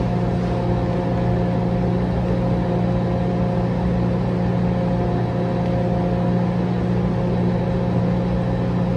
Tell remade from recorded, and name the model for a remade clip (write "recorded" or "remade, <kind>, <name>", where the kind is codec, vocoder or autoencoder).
recorded